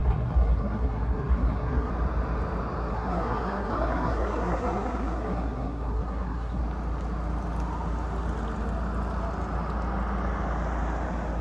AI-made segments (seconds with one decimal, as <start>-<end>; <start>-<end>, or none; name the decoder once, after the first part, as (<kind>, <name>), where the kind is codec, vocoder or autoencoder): 0.0-1.9 (codec, SNAC); 2.9-6.6